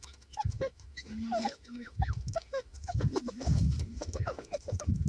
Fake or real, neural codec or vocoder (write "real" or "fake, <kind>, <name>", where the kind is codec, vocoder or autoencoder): fake, autoencoder, DAC-VAE